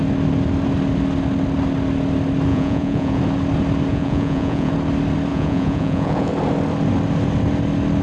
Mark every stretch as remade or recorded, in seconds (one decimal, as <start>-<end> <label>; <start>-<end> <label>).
0.0-2.5 recorded; 2.5-3.2 remade; 3.2-3.9 recorded; 3.9-4.7 remade; 4.7-5.3 recorded; 5.3-6.3 remade; 6.3-8.0 recorded